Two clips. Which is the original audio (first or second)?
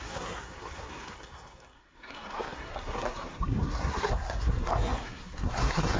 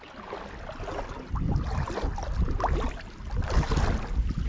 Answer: second